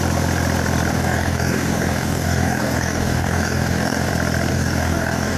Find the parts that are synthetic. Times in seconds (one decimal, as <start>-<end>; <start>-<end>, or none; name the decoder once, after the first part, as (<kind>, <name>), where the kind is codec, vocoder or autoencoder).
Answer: 0.9-4.1 (codec, DAC); 4.5-5.4